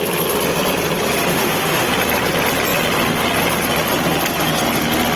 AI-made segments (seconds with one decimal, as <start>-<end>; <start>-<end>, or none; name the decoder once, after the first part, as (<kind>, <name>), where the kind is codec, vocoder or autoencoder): 1.3-1.9 (autoencoder, DAC-VAE)